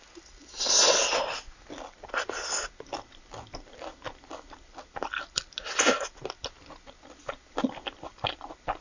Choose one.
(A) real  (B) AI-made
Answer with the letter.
A